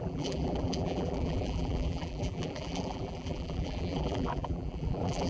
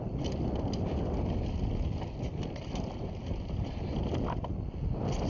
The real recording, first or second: second